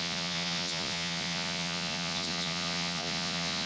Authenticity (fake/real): fake